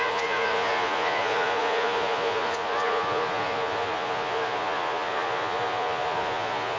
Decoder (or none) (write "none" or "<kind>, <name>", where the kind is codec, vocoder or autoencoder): vocoder, Vocos